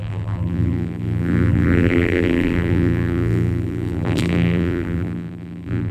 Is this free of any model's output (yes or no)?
no